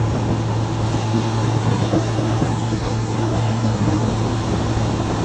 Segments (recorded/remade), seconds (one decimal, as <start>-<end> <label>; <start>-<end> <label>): 0.0-1.0 recorded; 1.0-4.1 remade; 4.1-5.2 recorded